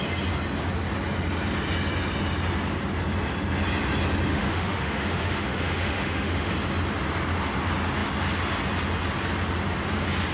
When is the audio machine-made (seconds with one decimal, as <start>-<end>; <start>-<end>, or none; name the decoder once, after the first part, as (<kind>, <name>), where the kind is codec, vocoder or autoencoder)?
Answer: 4.3-6.5 (autoencoder, DAC-VAE)